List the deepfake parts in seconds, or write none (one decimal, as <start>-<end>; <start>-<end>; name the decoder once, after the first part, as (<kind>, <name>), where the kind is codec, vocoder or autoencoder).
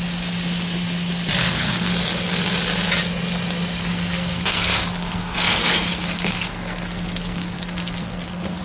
1.4-1.9 (codec, SNAC); 3.8-8.6